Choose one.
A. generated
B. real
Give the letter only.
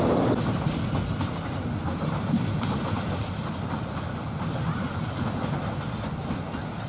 B